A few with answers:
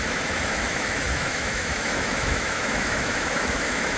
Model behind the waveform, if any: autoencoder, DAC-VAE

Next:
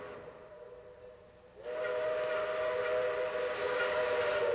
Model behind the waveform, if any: none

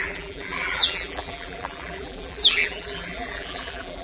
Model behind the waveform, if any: vocoder, BigVGAN v2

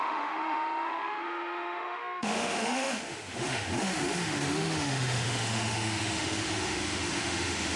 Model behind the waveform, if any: autoencoder, DAC-VAE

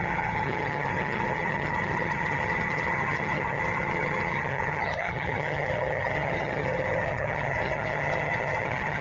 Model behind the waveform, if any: vocoder, HiFi-GAN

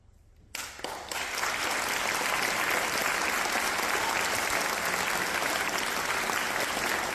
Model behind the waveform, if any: none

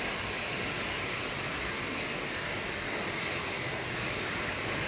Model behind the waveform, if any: none